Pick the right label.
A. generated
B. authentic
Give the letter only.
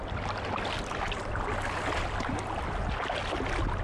B